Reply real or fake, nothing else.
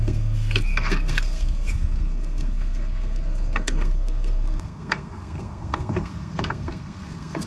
fake